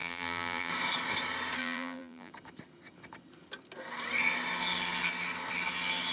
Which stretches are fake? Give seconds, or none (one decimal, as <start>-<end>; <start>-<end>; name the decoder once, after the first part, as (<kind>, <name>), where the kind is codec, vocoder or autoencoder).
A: 0.0-0.7 (vocoder, BigVGAN v2); 1.6-2.3

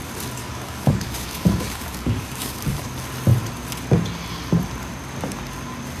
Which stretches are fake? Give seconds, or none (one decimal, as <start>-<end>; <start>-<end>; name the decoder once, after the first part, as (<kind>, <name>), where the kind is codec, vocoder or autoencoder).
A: 0.4-2.9 (codec, DAC)